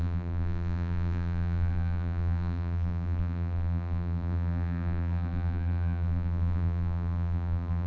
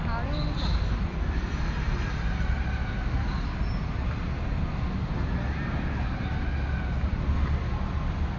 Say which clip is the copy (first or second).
first